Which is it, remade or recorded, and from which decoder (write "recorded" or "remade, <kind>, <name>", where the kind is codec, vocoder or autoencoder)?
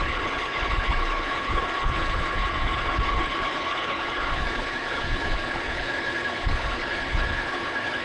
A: remade, codec, HILCodec